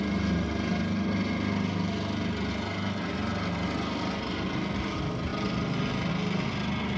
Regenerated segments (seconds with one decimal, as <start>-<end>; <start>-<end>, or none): none